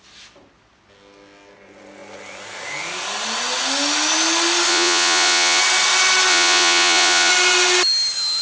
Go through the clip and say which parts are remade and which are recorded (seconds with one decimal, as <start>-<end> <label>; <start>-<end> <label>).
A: 0.0-4.7 recorded; 4.7-5.6 remade; 5.6-6.3 recorded; 6.3-7.3 remade; 7.3-8.4 recorded